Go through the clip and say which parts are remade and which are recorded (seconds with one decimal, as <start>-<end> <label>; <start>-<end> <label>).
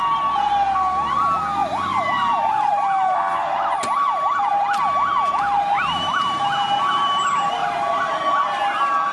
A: 0.0-1.6 recorded; 1.6-2.5 remade; 2.5-9.1 recorded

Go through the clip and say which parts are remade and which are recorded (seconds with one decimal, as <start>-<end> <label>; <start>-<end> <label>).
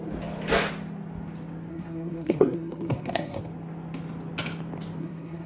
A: 0.0-1.7 recorded; 1.7-3.4 remade; 3.4-5.0 recorded; 5.0-5.5 remade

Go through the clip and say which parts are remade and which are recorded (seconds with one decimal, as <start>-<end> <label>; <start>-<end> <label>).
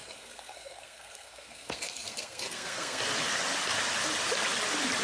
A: 0.0-3.0 remade; 3.0-5.0 recorded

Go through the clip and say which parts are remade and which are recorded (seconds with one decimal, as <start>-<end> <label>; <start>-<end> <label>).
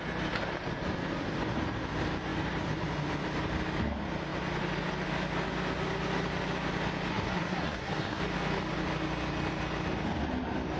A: 0.0-7.1 recorded; 7.1-8.2 remade; 8.2-10.8 recorded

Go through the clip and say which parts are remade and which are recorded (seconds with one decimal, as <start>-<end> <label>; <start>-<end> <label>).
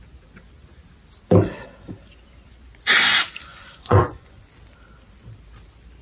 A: 0.0-3.5 recorded; 3.5-4.4 remade; 4.4-6.0 recorded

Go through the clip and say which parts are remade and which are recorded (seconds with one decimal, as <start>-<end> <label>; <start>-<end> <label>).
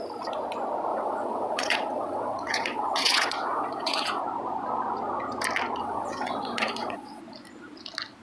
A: 0.0-0.9 recorded; 0.9-4.2 remade; 4.2-5.8 recorded; 5.8-7.2 remade; 7.2-8.2 recorded